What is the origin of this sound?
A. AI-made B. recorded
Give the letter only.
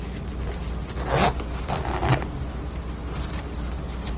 B